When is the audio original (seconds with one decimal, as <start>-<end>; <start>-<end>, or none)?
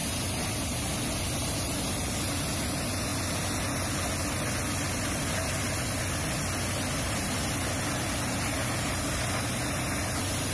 0.0-10.5